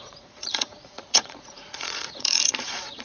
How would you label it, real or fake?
fake